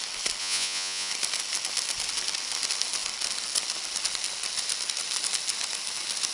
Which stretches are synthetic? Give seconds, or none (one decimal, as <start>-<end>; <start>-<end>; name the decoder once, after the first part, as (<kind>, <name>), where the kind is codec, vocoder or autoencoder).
0.4-1.1 (vocoder, Vocos)